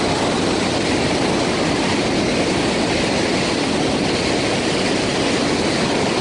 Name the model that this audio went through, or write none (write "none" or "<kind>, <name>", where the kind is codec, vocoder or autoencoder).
none